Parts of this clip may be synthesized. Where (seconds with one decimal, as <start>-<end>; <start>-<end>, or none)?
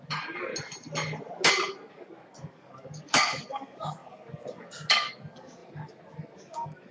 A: 0.0-0.5; 1.9-6.9